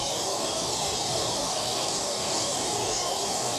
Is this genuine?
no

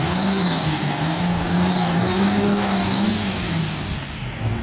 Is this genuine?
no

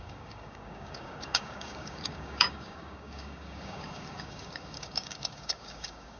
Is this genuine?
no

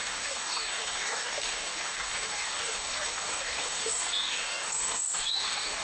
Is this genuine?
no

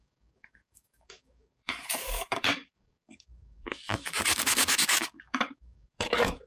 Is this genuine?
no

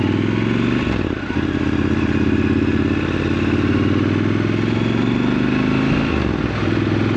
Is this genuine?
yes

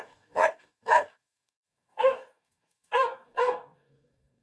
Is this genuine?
no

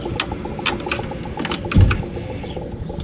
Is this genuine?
yes